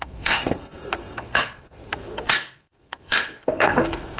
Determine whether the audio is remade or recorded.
remade